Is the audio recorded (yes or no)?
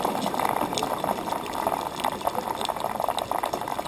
no